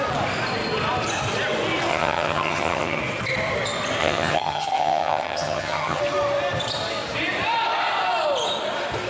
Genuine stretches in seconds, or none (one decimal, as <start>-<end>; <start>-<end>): 0.0-1.9; 3.0-4.0; 6.0-9.1